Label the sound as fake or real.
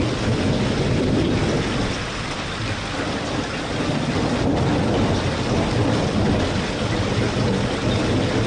real